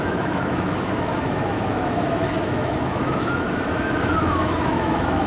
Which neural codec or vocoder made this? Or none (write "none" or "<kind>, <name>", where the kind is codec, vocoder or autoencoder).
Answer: autoencoder, DAC-VAE